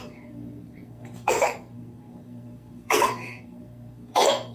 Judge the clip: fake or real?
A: fake